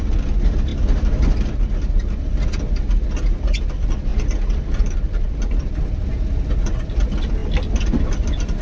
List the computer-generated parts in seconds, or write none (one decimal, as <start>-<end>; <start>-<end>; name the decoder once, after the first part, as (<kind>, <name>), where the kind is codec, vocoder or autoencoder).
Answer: none

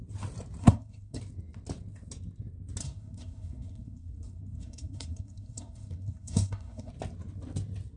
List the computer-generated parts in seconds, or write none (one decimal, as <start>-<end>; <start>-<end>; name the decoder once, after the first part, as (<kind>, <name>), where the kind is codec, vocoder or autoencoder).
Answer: 0.6-1.2 (codec, SNAC); 2.8-6.9